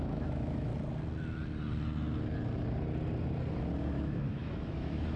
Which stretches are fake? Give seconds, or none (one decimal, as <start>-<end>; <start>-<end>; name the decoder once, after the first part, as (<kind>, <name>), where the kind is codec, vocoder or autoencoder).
0.0-0.7 (autoencoder, DAC-VAE); 3.8-5.2